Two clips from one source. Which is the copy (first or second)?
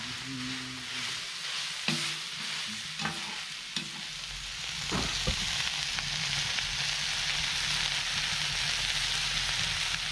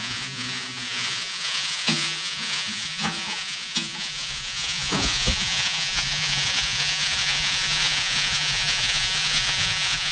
second